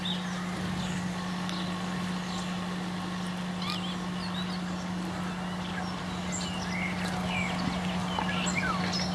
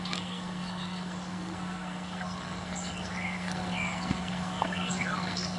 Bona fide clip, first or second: first